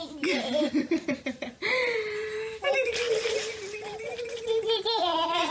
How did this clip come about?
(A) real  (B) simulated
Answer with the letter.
B